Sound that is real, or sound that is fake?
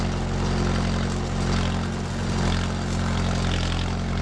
real